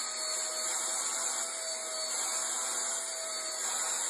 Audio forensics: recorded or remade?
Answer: recorded